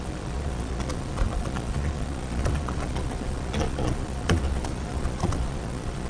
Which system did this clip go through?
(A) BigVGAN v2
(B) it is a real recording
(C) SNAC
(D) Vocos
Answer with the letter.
D